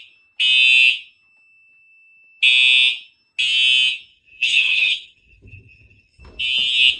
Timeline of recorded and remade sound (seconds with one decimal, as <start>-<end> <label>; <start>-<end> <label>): 0.0-4.1 recorded; 4.1-6.2 remade; 6.2-7.0 recorded